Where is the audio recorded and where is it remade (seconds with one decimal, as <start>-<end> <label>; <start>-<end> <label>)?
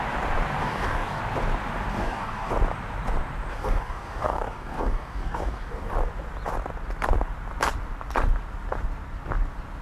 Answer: 0.0-0.6 recorded; 0.6-1.2 remade; 1.2-1.9 recorded; 1.9-2.5 remade; 2.5-3.5 recorded; 3.5-5.9 remade; 5.9-9.8 recorded